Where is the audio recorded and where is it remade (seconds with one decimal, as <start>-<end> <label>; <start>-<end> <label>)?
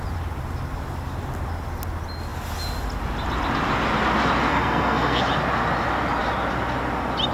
0.0-4.5 recorded; 4.5-5.2 remade; 5.2-7.3 recorded